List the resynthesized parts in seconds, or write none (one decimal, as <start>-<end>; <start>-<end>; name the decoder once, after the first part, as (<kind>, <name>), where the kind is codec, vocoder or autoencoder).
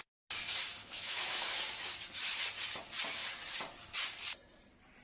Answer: 0.8-1.8 (autoencoder, DAC-VAE)